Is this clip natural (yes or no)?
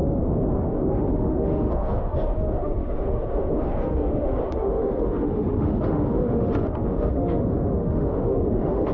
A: no